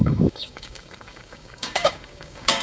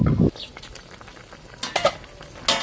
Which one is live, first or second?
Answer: second